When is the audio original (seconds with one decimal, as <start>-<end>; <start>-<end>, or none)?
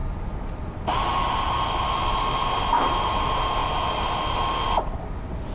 0.0-5.5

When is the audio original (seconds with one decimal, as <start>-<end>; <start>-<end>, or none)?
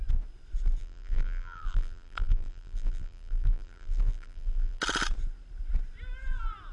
0.0-0.8; 4.8-6.7